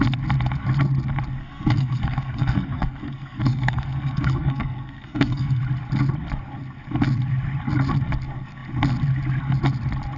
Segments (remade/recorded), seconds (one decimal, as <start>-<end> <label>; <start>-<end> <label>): 0.0-1.4 recorded; 1.4-5.6 remade; 5.6-10.2 recorded